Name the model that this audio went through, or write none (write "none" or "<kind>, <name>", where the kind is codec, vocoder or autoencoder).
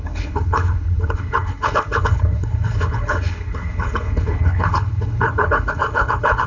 codec, HILCodec